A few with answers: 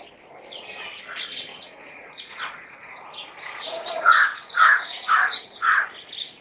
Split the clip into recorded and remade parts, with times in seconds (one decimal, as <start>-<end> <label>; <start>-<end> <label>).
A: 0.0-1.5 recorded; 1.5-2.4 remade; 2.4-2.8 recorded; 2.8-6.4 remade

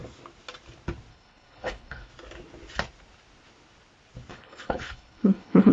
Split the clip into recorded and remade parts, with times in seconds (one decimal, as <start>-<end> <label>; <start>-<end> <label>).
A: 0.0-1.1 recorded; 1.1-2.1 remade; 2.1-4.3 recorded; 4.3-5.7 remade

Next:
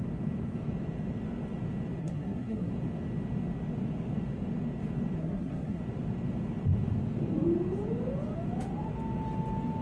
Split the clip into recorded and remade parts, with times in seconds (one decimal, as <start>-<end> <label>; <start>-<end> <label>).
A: 0.0-2.0 recorded; 2.0-2.7 remade; 2.7-5.2 recorded; 5.2-5.8 remade; 5.8-9.8 recorded

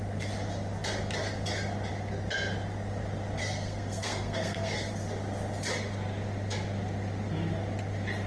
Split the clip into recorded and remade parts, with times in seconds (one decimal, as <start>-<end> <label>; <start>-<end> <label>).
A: 0.0-3.4 recorded; 3.4-4.9 remade; 4.9-8.3 recorded